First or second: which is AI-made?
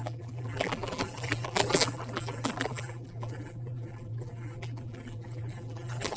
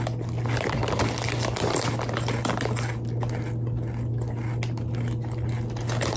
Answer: first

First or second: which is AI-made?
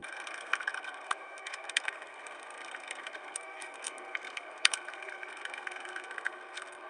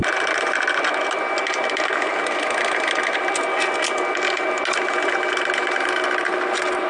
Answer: first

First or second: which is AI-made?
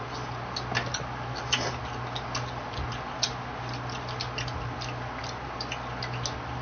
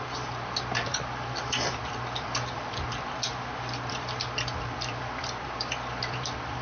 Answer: second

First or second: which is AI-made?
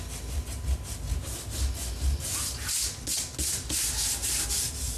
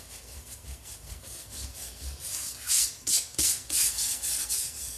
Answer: second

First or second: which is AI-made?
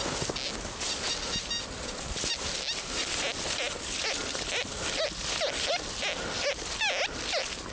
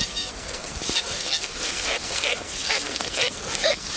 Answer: second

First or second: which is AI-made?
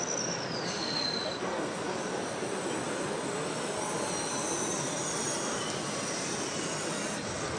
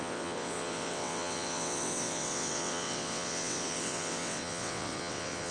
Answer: second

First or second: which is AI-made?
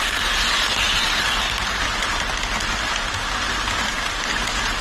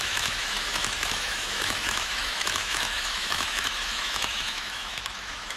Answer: second